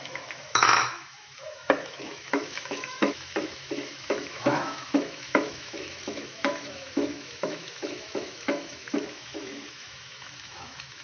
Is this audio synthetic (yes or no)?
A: yes